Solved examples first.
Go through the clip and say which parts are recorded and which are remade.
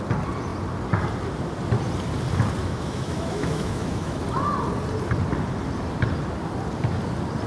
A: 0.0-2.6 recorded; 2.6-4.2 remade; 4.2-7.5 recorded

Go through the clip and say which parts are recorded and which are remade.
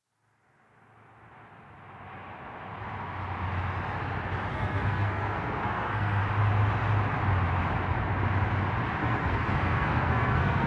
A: 0.0-4.5 recorded; 4.5-6.2 remade; 6.2-9.0 recorded; 9.0-10.7 remade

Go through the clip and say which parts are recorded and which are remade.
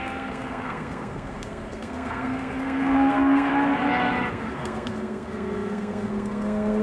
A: 0.0-3.5 remade; 3.5-4.3 recorded; 4.3-6.8 remade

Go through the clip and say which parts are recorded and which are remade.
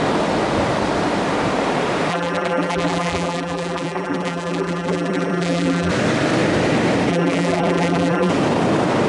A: 0.0-2.1 recorded; 2.1-5.9 remade; 5.9-7.1 recorded; 7.1-8.3 remade; 8.3-9.1 recorded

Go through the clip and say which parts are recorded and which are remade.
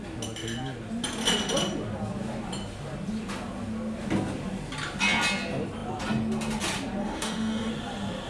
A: 0.0-7.0 recorded; 7.0-7.7 remade; 7.7-8.3 recorded